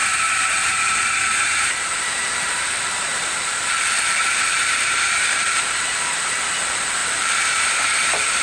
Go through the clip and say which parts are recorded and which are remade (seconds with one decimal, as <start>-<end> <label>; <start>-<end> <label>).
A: 0.0-0.6 recorded; 0.6-8.4 remade